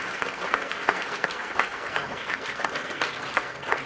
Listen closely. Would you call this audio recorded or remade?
remade